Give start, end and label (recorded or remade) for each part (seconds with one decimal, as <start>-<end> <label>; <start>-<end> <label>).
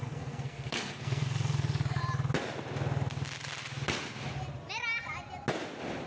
0.0-2.0 remade; 2.0-6.1 recorded